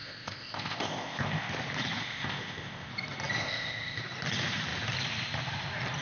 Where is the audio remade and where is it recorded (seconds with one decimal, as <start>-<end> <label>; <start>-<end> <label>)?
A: 0.0-1.5 remade; 1.5-2.0 recorded; 2.0-2.9 remade; 2.9-3.4 recorded; 3.4-4.0 remade; 4.0-6.0 recorded